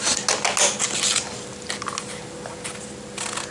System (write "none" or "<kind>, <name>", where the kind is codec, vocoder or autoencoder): none